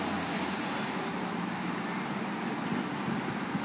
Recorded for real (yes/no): yes